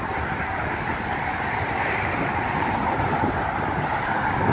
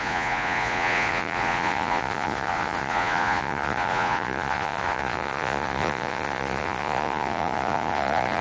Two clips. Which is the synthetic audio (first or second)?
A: second